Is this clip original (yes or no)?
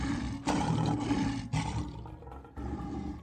yes